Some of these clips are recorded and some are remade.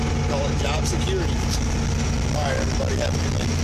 recorded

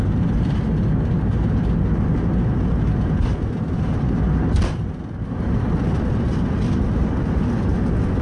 recorded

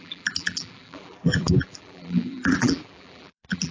remade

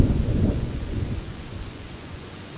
remade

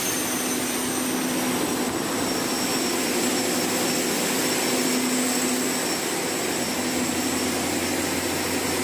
recorded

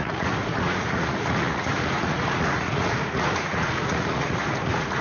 remade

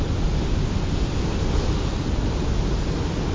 recorded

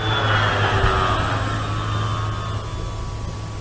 recorded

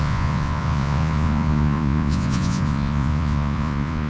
remade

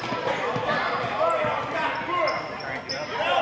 recorded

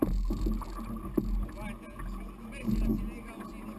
recorded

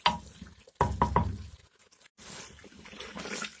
recorded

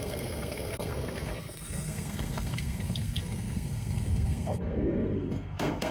remade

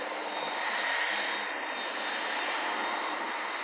recorded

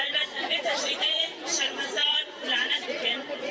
remade